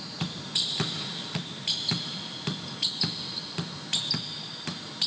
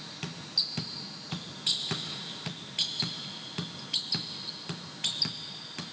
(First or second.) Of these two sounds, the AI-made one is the first